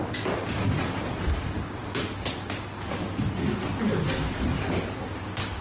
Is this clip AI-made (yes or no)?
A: no